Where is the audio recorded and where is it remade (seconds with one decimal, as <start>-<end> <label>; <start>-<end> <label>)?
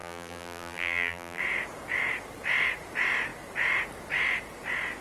0.0-1.4 remade; 1.4-5.0 recorded